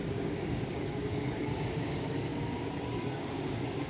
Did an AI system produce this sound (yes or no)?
yes